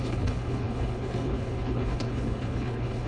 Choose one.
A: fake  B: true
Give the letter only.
A